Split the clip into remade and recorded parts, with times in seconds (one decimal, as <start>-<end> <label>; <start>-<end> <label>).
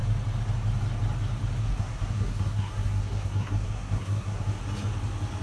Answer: 0.0-1.6 recorded; 1.6-4.6 remade; 4.6-5.4 recorded